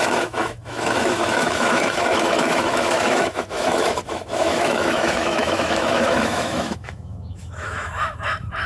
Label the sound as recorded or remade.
remade